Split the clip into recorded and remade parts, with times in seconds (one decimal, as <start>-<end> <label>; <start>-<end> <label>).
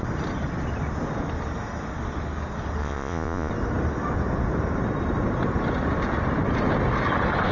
0.0-2.8 recorded; 2.8-3.5 remade; 3.5-7.5 recorded